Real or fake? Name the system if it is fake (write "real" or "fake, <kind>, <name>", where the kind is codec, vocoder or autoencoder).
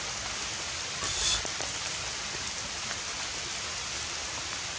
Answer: real